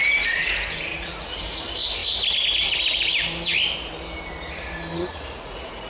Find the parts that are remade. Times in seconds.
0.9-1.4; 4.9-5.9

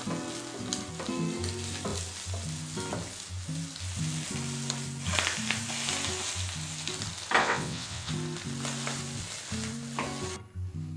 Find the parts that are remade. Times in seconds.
7.4-8.1

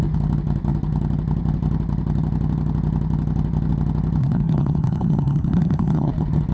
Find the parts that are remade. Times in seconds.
4.2-6.1

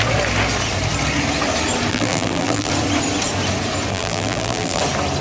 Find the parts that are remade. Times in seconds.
1.9-2.7; 3.9-4.8

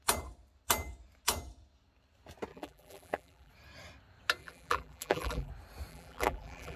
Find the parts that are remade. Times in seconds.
2.5-3.5; 4.4-5.5; 5.9-6.8